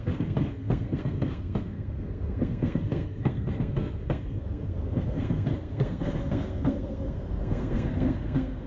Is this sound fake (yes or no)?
yes